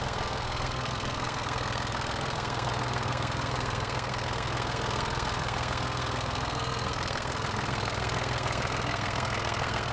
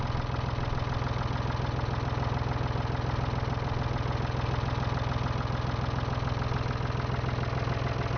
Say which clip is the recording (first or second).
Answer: second